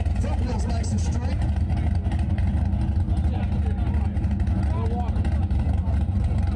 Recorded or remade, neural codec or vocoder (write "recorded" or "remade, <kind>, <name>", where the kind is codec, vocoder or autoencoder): recorded